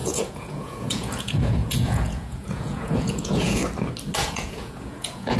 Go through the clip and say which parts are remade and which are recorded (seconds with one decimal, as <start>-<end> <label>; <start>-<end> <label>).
0.0-3.6 remade; 3.6-4.2 recorded; 4.2-5.4 remade